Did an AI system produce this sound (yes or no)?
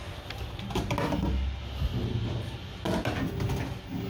no